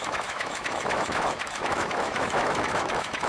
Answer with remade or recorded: remade